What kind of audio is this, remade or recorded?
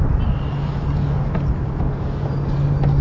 recorded